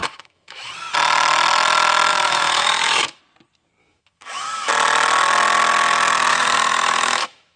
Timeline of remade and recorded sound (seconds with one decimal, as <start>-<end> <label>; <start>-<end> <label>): 0.0-0.7 remade; 0.7-2.1 recorded; 2.1-3.2 remade; 3.2-3.8 recorded; 3.8-4.7 remade; 4.7-6.3 recorded; 6.3-7.6 remade